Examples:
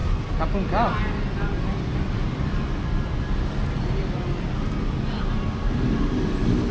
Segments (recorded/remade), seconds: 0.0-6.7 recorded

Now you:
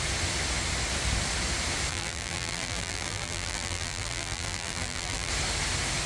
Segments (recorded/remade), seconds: 0.0-1.9 recorded; 1.9-5.3 remade; 5.3-6.1 recorded

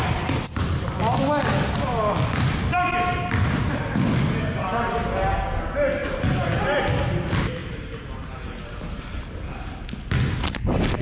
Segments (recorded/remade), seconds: 0.0-3.1 recorded; 3.1-3.9 remade; 3.9-6.0 recorded; 6.0-6.8 remade; 6.8-7.6 recorded; 7.6-9.1 remade; 9.1-11.0 recorded

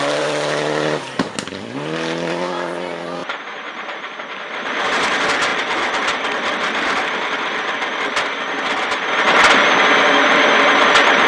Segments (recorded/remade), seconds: 0.0-3.2 recorded; 3.2-4.8 remade; 4.8-5.5 recorded; 5.5-8.4 remade; 8.4-11.3 recorded

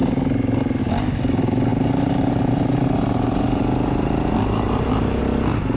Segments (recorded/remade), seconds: 0.0-1.7 recorded; 1.7-5.2 remade; 5.2-5.8 recorded

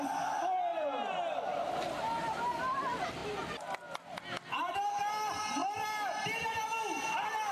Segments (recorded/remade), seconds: 0.0-0.7 recorded; 0.7-2.6 remade; 2.6-7.5 recorded

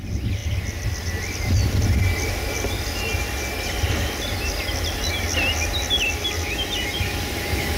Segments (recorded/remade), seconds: 0.0-7.8 recorded